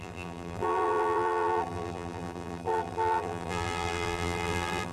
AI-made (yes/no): yes